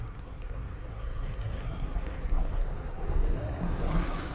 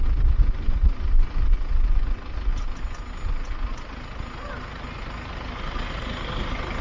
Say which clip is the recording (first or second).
second